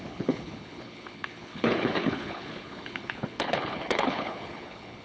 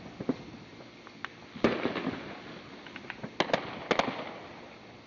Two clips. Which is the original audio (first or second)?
second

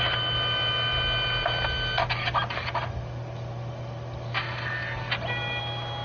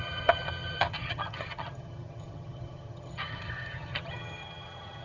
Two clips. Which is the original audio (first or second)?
first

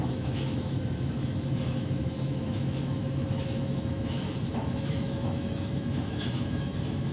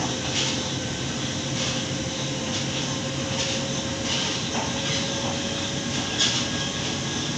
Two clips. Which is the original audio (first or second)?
second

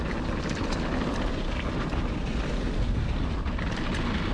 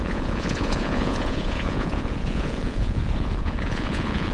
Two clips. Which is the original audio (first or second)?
first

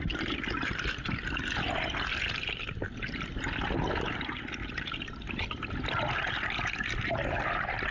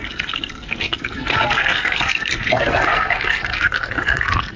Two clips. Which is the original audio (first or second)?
first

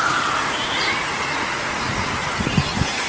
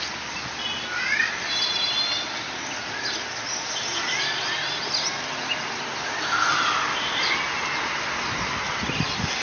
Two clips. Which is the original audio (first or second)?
second